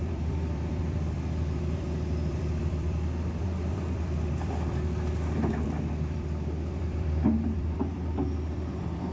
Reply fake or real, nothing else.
fake